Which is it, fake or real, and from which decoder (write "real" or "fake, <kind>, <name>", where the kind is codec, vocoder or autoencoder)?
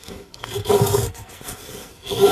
fake, codec, SNAC